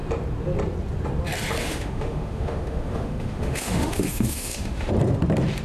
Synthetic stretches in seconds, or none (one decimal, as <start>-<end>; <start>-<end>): 1.6-4.9